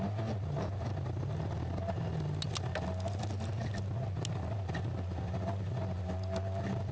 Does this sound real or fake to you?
real